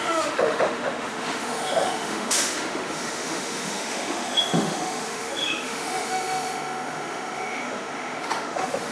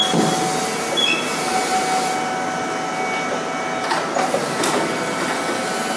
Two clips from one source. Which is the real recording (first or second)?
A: second